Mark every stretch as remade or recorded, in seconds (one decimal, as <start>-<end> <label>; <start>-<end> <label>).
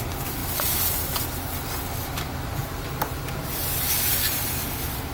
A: 0.0-0.4 remade; 0.4-0.9 recorded; 0.9-5.1 remade